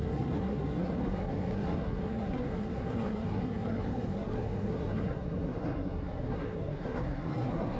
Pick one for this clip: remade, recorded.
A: remade